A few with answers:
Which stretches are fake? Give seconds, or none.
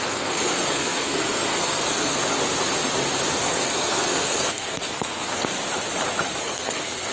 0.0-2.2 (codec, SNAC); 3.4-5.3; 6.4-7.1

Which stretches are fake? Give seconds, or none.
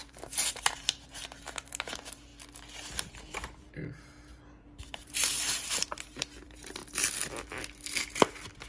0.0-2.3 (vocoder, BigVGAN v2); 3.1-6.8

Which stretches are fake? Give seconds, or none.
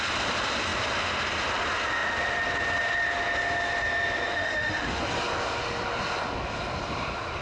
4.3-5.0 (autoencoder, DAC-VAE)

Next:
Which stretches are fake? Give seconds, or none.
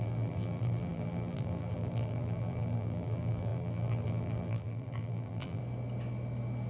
0.0-5.6 (vocoder, BigVGAN v2)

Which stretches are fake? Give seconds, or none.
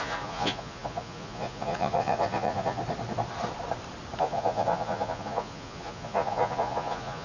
0.0-2.8 (vocoder, Vocos); 4.2-7.2